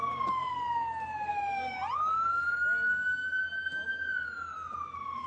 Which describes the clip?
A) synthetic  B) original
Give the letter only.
B